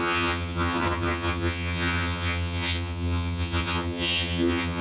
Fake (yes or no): yes